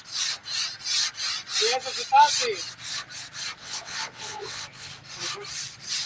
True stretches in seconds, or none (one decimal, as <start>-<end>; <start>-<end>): 0.0-3.6; 4.9-6.1